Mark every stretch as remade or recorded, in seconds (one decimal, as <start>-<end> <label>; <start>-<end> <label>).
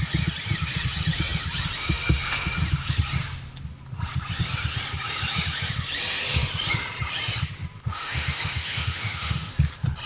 0.0-7.9 recorded; 7.9-9.5 remade; 9.5-10.1 recorded